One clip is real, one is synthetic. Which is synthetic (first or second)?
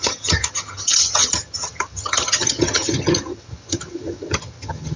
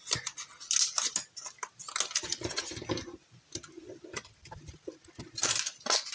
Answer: first